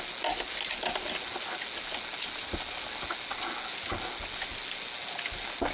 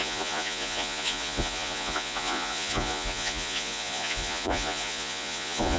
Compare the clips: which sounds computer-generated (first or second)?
second